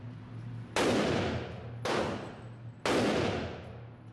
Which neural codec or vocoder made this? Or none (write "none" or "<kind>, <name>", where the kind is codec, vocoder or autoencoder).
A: none